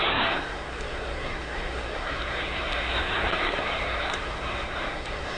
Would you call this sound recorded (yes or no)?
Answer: no